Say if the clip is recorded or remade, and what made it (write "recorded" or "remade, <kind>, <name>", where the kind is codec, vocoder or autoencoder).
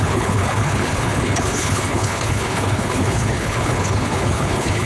remade, codec, HILCodec